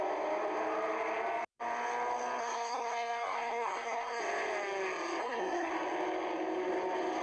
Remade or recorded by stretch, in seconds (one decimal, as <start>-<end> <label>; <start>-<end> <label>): 0.0-2.4 recorded; 2.4-4.2 remade; 4.2-5.2 recorded; 5.2-5.7 remade; 5.7-7.2 recorded